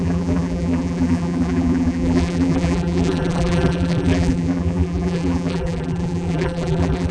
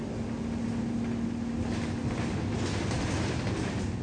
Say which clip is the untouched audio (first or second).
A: second